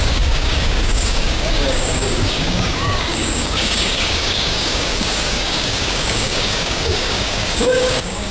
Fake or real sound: fake